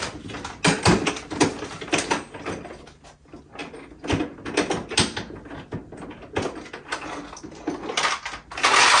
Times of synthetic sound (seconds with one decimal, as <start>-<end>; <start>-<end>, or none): none